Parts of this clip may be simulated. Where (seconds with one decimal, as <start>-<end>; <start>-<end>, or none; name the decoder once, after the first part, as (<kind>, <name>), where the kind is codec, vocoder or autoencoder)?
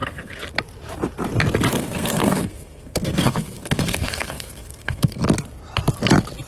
0.0-0.5 (codec, SNAC); 1.7-5.2